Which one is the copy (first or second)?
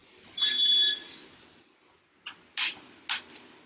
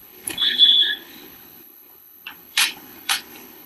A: second